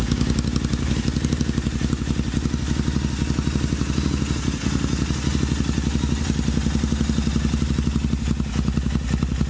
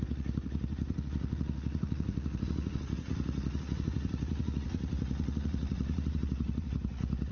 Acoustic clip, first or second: first